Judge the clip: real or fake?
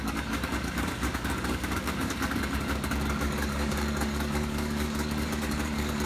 fake